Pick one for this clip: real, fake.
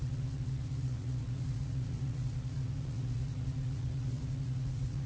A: fake